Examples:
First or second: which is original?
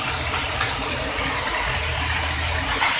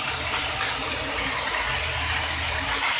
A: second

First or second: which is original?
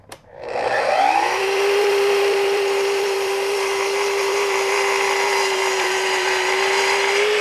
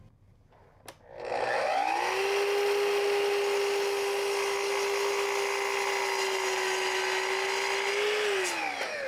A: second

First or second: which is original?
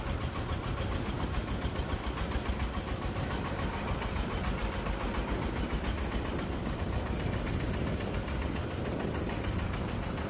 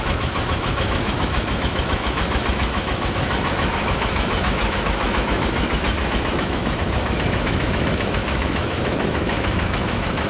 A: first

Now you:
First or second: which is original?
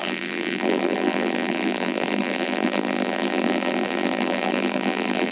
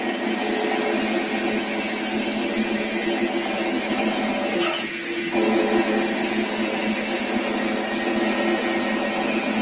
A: second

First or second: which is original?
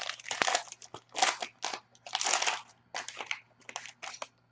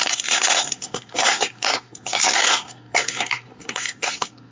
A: first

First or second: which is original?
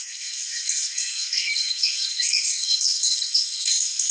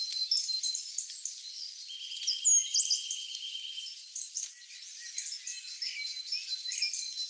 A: second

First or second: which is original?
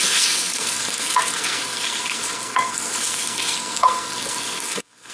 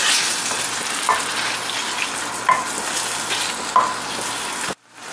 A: second